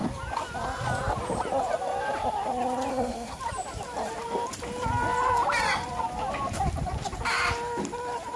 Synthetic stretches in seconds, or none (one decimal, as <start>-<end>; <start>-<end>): 2.9-3.4